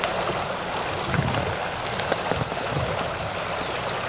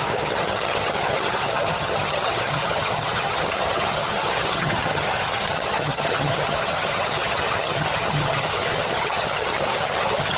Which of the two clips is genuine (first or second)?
first